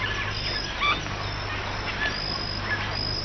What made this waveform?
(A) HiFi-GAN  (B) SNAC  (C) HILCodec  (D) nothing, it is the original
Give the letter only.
D